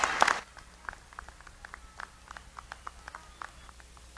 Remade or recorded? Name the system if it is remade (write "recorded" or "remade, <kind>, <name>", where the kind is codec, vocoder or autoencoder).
recorded